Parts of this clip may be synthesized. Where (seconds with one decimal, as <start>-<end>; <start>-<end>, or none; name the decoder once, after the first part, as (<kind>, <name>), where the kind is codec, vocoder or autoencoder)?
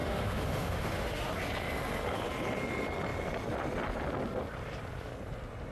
0.0-1.3 (autoencoder, DAC-VAE)